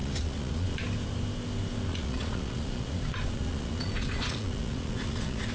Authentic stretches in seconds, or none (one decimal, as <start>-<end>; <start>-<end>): 0.8-1.9